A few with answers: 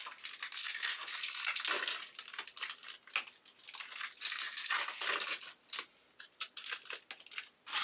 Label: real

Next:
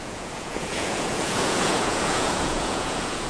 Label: fake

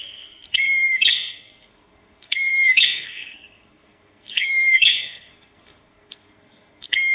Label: fake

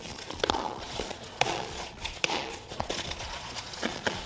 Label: fake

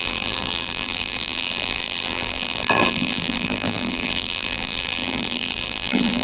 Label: fake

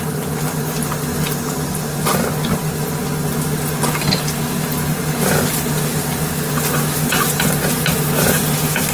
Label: real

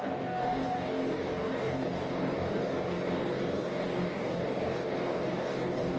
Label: fake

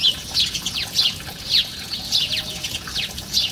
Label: fake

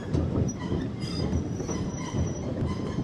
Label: fake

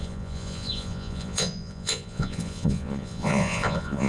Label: fake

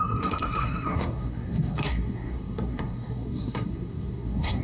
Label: fake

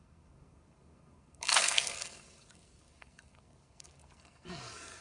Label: fake